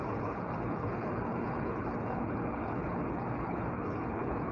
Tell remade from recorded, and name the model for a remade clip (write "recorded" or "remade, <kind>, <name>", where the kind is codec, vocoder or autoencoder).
remade, codec, HILCodec